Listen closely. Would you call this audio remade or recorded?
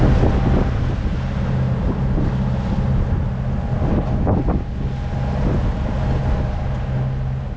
recorded